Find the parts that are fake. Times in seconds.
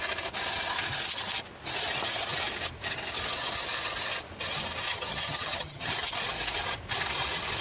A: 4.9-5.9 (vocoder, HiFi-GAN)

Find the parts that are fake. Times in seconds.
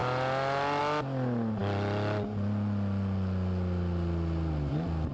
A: none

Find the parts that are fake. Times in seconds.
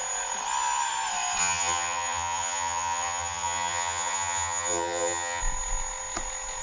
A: 1.4-5.4 (vocoder, HiFi-GAN)